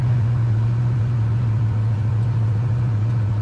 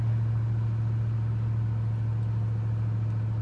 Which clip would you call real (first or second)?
second